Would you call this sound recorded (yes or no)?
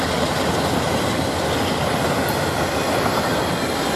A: yes